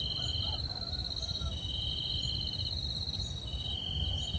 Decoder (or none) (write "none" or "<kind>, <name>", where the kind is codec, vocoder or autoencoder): none